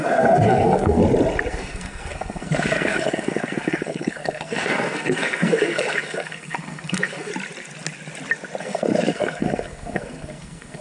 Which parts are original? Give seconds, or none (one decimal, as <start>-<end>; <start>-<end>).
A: 1.0-1.5; 7.3-8.6